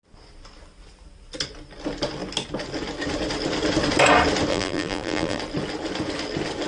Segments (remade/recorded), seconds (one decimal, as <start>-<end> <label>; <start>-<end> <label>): 0.0-4.5 recorded; 4.5-5.4 remade; 5.4-6.7 recorded